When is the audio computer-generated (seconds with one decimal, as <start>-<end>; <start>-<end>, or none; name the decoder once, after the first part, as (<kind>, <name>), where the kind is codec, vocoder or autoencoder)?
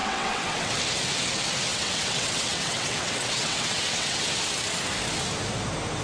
0.0-0.8 (vocoder, WaveNeXt); 1.7-4.2